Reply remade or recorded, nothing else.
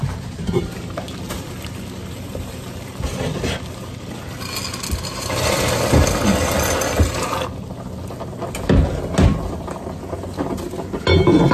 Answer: recorded